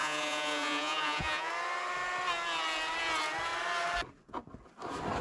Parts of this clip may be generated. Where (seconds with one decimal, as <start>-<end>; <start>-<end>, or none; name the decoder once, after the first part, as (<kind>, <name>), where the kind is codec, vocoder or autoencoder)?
0.0-1.5 (vocoder, Vocos)